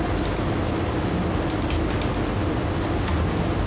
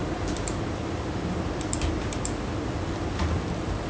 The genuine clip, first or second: first